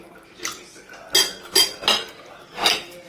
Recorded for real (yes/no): yes